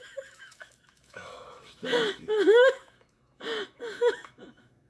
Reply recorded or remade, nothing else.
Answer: remade